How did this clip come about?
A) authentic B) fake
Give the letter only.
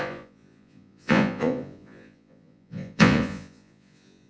B